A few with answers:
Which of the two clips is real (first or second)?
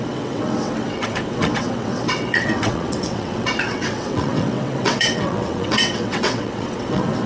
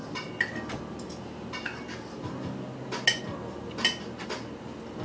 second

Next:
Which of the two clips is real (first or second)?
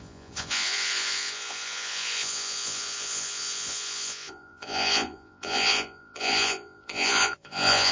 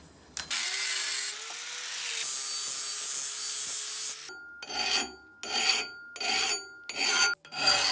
second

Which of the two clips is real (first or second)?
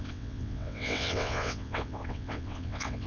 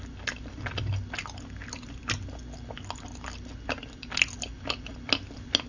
second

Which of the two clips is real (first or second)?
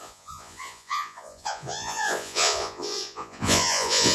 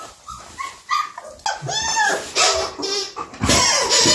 second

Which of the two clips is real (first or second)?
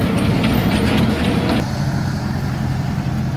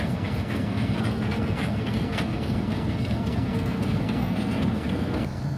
first